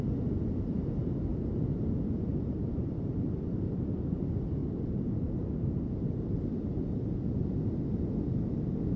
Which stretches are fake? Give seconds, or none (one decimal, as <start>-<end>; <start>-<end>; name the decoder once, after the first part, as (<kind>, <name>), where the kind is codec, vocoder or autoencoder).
1.3-1.9 (vocoder, BigVGAN v2); 2.3-3.7; 4.6-5.3